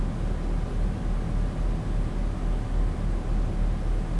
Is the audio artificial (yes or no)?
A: no